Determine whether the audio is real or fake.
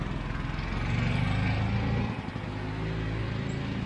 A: real